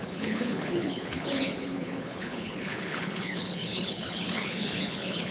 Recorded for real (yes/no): no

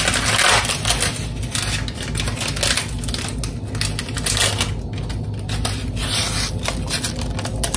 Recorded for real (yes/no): yes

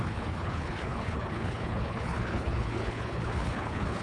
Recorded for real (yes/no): no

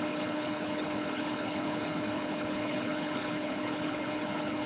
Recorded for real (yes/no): no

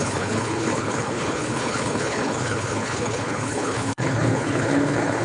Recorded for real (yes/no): no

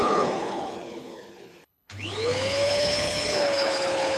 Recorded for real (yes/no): no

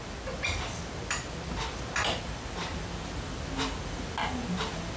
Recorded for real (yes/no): yes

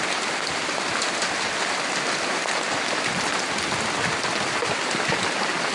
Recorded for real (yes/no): yes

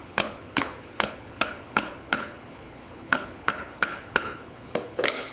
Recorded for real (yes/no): no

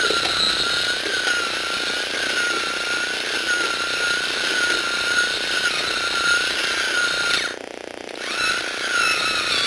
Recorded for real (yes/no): yes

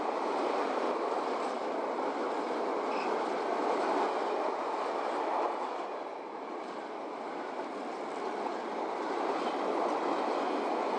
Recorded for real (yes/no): yes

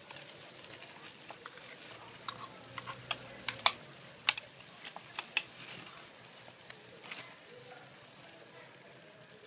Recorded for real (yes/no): yes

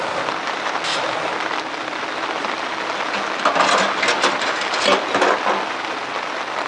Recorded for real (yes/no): yes